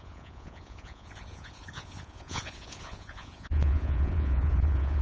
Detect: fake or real fake